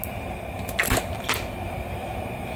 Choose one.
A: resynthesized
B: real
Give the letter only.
B